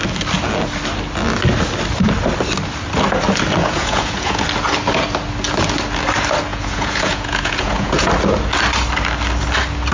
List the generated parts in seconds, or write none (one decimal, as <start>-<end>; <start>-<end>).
3.6-4.4; 6.5-8.1